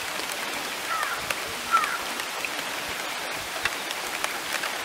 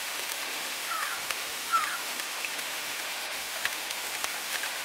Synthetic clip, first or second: second